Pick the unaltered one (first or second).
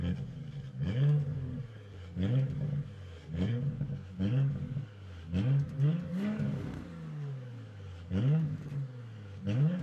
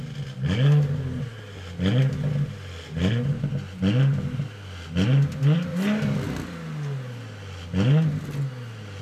second